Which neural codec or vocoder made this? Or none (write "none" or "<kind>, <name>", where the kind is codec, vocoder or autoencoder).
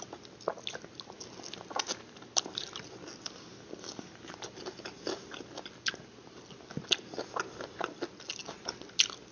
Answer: none